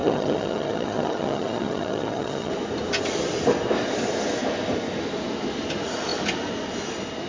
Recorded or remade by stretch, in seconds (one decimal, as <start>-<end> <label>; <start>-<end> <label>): 0.0-2.5 remade; 2.5-7.3 recorded